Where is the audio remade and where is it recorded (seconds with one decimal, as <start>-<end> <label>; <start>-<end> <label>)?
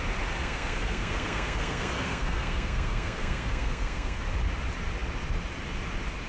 0.0-0.4 recorded; 0.4-4.2 remade; 4.2-6.3 recorded